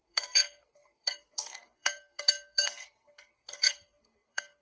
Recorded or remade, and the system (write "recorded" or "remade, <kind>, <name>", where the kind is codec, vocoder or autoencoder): remade, codec, SNAC